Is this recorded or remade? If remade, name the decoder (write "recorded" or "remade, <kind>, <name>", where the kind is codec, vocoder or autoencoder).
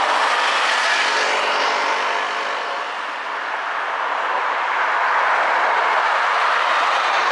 recorded